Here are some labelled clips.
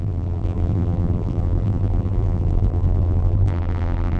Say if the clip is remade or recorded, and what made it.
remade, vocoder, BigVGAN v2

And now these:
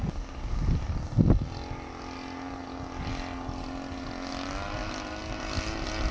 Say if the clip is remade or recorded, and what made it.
recorded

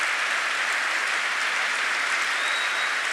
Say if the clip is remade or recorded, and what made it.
recorded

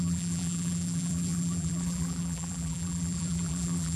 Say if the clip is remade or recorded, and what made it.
remade, vocoder, BigVGAN v2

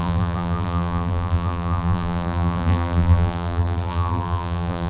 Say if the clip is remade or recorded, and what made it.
remade, vocoder, BigVGAN v2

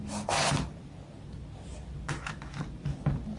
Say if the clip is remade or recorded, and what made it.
recorded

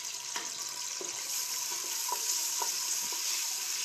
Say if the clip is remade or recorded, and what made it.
recorded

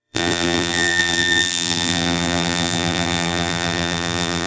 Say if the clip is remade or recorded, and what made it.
remade, vocoder, BigVGAN v2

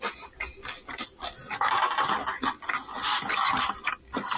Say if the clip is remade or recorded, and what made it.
recorded